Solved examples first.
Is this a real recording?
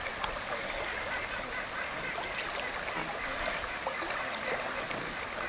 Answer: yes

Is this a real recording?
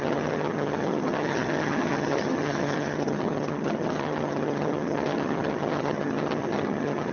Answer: no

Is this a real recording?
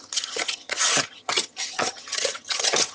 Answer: no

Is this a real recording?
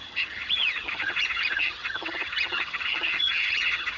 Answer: no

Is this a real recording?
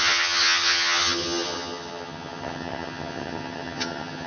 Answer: no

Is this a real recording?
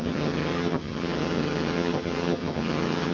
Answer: no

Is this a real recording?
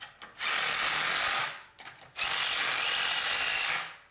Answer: yes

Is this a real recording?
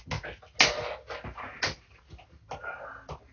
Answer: yes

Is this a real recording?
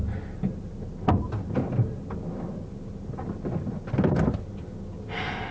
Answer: yes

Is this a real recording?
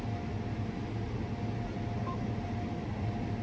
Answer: yes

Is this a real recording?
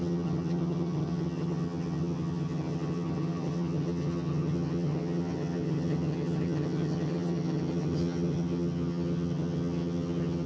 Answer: no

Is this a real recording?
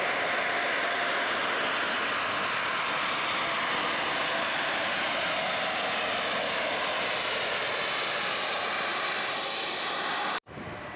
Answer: yes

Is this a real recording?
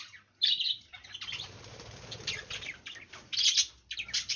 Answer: yes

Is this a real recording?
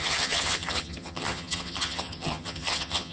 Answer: no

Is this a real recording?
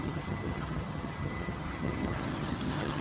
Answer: no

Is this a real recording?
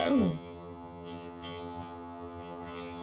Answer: no